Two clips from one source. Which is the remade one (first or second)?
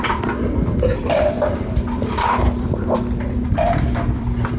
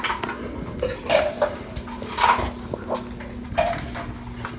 first